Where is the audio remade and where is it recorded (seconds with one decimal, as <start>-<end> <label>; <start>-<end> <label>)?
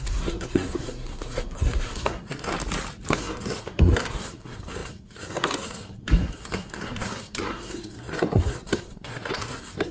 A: 0.0-2.5 remade; 2.5-3.1 recorded; 3.1-9.9 remade